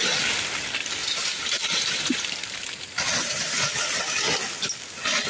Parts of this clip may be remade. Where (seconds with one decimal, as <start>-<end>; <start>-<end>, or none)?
1.0-2.6